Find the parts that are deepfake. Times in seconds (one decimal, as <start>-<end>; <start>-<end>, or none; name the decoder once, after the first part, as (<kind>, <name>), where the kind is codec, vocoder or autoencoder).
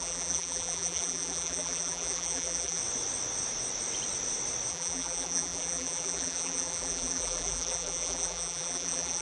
0.0-2.8 (vocoder, BigVGAN v2); 4.7-9.2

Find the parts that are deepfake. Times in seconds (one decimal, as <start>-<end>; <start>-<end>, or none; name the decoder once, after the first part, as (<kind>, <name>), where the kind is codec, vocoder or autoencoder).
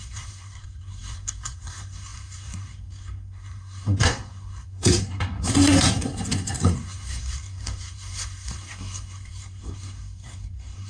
0.0-10.9 (codec, SNAC)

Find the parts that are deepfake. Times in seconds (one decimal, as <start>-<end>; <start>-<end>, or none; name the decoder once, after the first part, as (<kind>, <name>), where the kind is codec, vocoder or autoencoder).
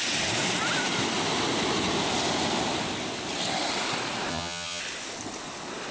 4.3-4.8 (vocoder, HiFi-GAN)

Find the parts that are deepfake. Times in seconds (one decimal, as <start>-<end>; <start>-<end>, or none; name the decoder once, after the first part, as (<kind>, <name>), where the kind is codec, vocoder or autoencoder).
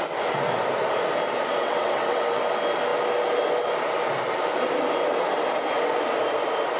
1.6-2.4 (vocoder, WaveNeXt)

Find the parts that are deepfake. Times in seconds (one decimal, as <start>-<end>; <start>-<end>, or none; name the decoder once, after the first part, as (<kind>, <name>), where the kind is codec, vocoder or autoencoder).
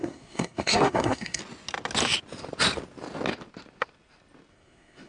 0.0-1.4 (codec, SNAC); 4.5-5.1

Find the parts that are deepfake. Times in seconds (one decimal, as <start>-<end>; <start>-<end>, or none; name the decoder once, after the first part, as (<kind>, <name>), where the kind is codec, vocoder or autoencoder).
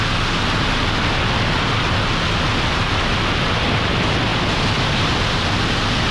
4.3-4.9 (vocoder, BigVGAN v2)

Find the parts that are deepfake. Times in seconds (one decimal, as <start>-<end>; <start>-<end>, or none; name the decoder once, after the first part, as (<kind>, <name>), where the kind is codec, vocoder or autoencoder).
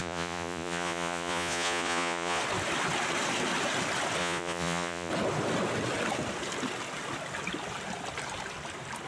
0.0-2.4 (vocoder, Vocos); 4.2-5.1